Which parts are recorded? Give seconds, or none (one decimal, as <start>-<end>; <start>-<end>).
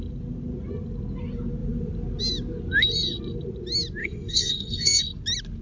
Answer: 0.0-4.0; 5.0-5.6